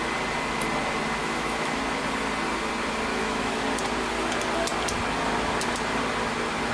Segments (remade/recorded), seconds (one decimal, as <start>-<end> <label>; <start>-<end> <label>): 0.0-1.2 recorded; 1.2-1.8 remade; 1.8-3.1 recorded; 3.1-3.6 remade; 3.6-6.7 recorded